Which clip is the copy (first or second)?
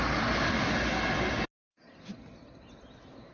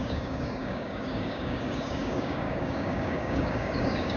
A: second